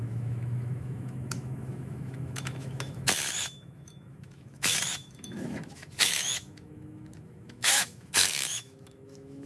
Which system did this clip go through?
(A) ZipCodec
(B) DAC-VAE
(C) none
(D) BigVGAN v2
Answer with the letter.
B